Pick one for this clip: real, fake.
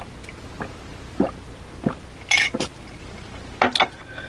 real